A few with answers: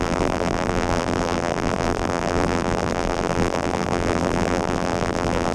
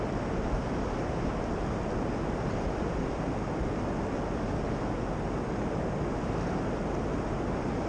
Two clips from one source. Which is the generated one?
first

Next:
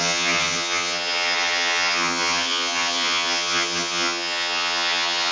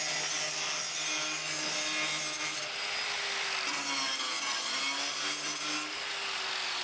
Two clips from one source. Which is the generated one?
first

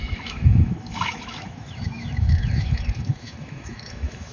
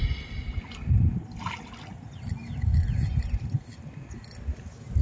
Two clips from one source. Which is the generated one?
first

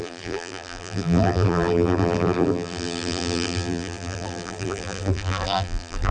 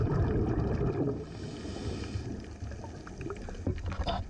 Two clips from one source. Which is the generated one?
first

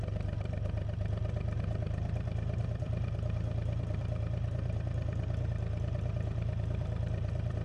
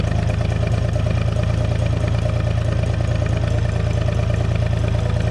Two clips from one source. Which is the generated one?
first